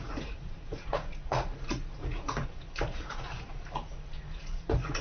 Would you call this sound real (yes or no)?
no